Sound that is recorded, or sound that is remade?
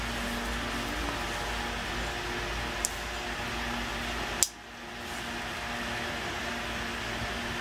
recorded